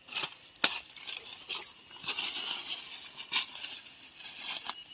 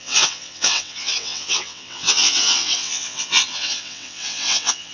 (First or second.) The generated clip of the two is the second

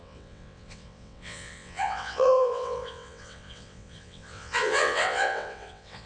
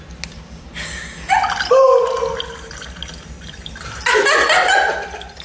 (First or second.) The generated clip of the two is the first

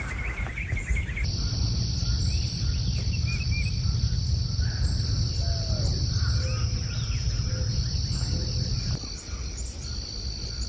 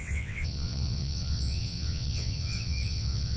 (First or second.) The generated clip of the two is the second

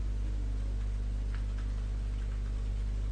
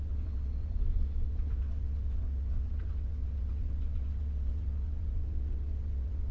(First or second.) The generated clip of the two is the second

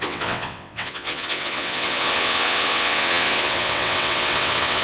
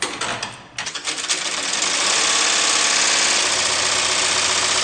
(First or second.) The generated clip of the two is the first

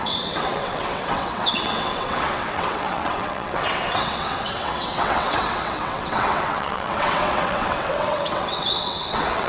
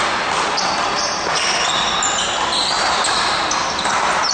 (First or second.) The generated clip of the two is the first